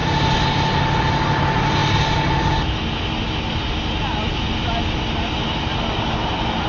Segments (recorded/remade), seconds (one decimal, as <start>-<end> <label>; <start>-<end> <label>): 0.0-6.7 recorded